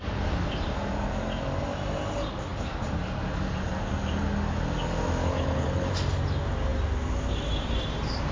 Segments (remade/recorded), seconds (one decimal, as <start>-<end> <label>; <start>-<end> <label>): 0.0-5.2 recorded; 5.2-5.9 remade; 5.9-8.3 recorded